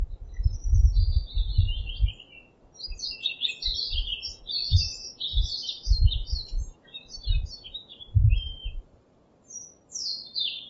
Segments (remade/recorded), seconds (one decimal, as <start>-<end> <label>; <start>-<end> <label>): 0.0-3.7 recorded; 3.7-4.4 remade; 4.4-5.5 recorded; 5.5-9.2 remade; 9.2-10.7 recorded